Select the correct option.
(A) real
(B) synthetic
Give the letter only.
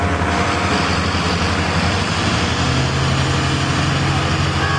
A